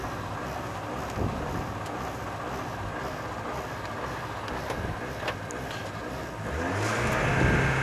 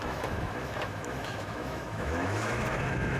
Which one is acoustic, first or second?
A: first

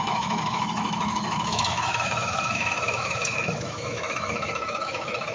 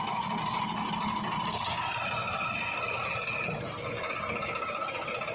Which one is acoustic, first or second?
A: second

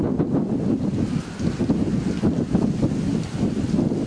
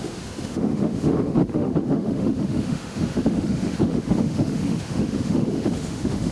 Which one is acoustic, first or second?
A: first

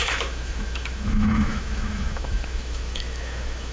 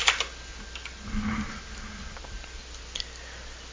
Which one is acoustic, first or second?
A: second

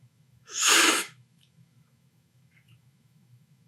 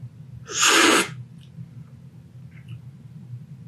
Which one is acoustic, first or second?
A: second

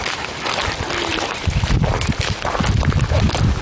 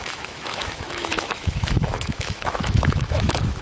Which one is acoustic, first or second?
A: first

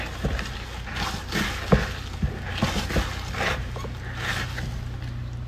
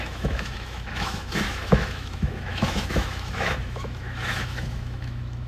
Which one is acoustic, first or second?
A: first